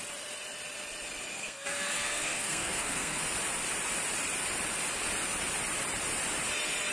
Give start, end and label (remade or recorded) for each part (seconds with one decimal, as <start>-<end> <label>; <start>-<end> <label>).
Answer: 0.0-1.4 recorded; 1.4-3.2 remade; 3.2-6.9 recorded